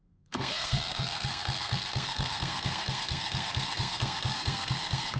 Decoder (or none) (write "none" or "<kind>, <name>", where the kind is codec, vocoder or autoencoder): codec, SNAC